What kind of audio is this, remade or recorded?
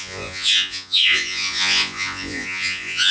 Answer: remade